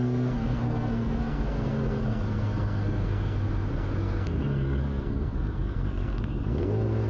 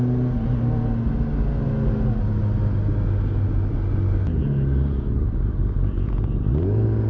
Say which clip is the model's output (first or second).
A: first